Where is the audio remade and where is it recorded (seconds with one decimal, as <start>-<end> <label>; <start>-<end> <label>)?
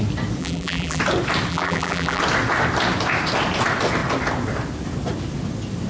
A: 0.0-0.4 recorded; 0.4-1.0 remade; 1.0-1.5 recorded; 1.5-2.2 remade; 2.2-5.9 recorded